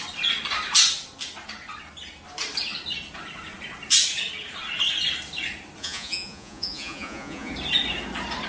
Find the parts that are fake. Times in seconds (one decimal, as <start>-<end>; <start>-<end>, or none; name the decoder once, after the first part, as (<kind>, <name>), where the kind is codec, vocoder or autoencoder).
5.8-7.5 (vocoder, Vocos)